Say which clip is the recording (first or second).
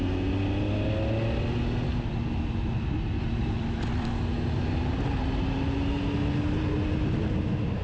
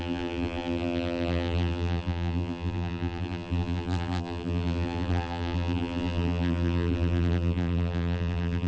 first